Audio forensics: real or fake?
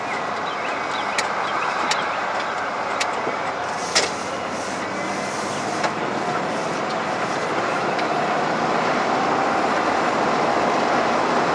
real